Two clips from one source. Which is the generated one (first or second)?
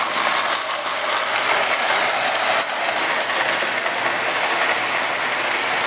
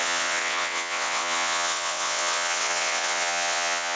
second